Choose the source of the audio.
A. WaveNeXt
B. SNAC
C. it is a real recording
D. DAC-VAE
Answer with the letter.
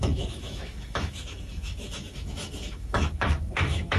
D